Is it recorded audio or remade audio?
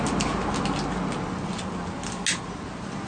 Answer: recorded